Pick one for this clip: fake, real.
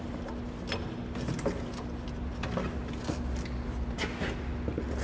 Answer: real